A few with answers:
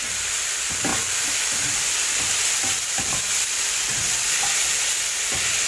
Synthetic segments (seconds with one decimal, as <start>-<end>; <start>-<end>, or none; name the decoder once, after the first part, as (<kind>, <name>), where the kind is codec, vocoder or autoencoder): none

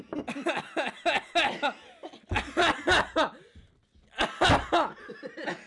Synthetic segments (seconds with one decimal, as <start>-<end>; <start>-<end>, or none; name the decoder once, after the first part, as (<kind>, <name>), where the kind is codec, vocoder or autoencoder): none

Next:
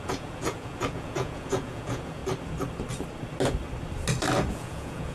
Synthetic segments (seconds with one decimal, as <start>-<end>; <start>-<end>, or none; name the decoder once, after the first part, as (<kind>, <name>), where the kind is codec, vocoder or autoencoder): 0.0-2.2 (vocoder, Vocos); 4.5-5.1

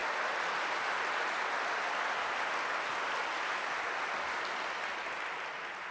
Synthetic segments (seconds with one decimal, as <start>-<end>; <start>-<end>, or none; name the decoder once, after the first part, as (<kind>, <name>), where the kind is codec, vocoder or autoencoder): none